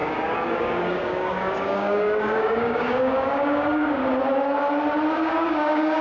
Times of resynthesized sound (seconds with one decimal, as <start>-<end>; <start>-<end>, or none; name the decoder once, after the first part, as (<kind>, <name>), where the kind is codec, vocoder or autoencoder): 0.0-4.0 (codec, DAC); 5.1-6.0